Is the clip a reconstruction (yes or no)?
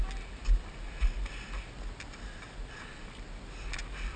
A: no